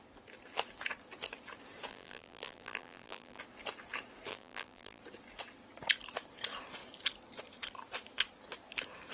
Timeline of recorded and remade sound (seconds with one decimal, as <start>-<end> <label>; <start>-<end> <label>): 0.0-1.9 recorded; 1.9-3.4 remade; 3.4-4.3 recorded; 4.3-5.0 remade; 5.0-9.1 recorded